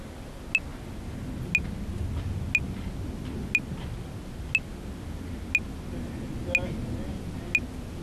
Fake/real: real